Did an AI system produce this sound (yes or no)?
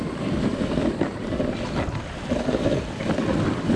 no